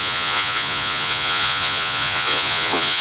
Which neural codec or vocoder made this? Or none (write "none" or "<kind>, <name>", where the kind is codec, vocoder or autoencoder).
vocoder, Vocos